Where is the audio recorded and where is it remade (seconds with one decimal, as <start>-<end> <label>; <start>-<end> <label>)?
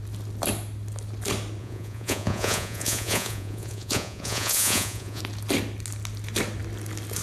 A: 0.0-1.6 recorded; 1.6-5.2 remade; 5.2-7.2 recorded